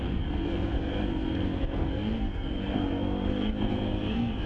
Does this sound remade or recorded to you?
remade